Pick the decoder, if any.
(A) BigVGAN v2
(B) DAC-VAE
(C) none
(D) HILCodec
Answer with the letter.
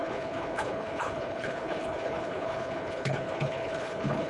D